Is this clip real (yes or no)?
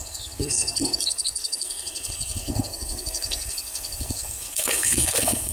no